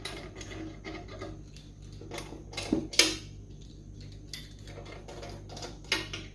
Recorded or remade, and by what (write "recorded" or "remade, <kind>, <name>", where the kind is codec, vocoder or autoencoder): recorded